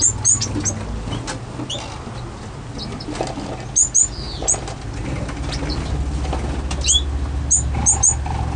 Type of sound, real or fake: real